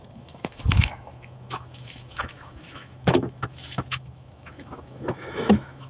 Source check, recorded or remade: remade